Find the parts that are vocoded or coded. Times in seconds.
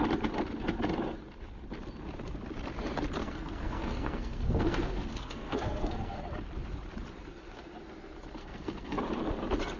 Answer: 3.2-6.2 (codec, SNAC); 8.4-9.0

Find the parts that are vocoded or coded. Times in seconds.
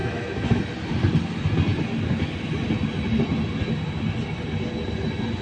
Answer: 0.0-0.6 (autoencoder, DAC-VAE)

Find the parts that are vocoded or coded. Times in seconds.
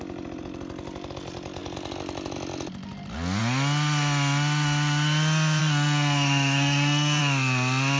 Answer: 5.6-7.2 (codec, SNAC)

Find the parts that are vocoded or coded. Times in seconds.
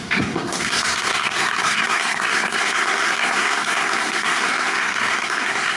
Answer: 0.0-5.8 (codec, SNAC)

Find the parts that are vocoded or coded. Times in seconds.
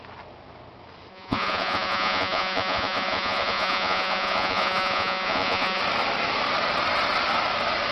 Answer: 1.1-5.8 (vocoder, Vocos)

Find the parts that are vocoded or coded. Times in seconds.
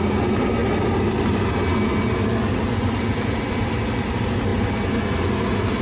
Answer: none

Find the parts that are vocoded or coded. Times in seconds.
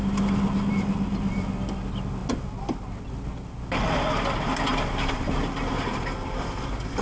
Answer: none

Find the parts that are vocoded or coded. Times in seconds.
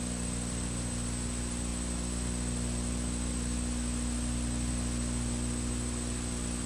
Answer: none